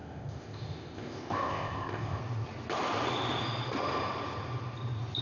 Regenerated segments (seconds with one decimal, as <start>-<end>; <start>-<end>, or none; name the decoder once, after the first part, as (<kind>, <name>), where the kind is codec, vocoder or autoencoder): 0.0-2.2 (codec, ZipCodec)